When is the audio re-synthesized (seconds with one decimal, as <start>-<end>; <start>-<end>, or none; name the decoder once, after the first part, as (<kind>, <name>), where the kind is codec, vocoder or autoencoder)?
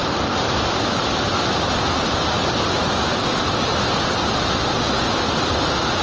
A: none